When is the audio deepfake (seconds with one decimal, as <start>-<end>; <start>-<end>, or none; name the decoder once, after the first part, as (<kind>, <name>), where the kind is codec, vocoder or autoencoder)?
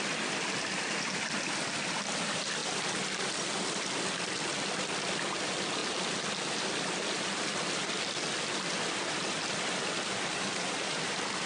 none